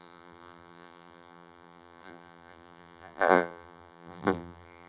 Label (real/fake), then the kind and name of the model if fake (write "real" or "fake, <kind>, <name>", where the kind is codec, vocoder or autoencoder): fake, vocoder, BigVGAN v2